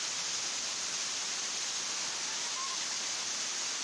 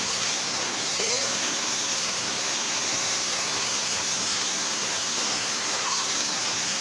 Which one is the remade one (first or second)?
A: second